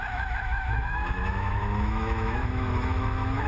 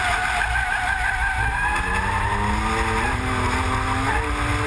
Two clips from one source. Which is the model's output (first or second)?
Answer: first